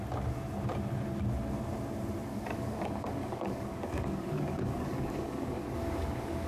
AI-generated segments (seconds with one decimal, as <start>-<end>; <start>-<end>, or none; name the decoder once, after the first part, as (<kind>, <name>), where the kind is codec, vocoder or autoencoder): 2.3-6.5 (codec, DAC)